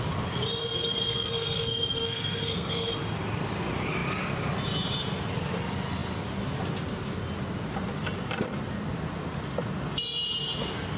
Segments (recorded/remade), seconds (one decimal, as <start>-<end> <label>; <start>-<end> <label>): 0.0-0.6 recorded; 0.6-2.9 remade; 2.9-11.0 recorded